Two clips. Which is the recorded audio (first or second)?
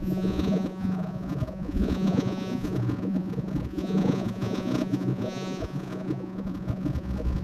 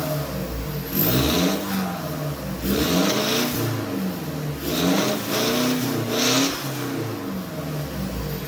second